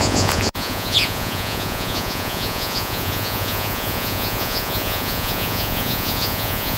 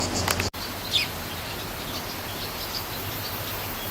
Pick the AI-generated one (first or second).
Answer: first